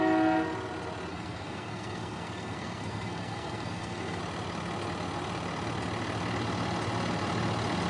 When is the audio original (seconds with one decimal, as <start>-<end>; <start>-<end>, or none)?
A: 0.0-1.1; 4.2-7.9